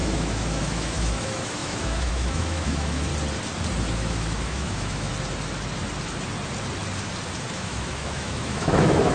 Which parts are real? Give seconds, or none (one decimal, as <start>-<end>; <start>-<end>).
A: 3.1-3.8; 5.1-7.5